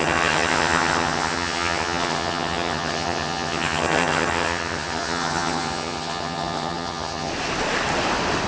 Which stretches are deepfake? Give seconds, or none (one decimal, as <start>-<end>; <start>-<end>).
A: 0.0-7.3